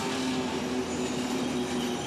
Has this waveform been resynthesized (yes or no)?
no